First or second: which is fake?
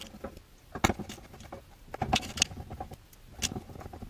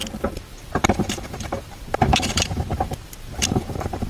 second